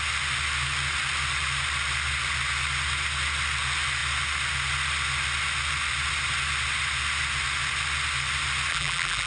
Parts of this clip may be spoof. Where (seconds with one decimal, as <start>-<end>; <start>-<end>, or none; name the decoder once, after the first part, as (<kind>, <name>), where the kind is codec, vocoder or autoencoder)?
8.7-9.3 (vocoder, BigVGAN v2)